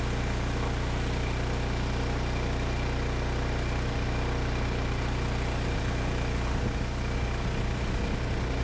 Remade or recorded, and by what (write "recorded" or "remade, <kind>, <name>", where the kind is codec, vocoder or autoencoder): recorded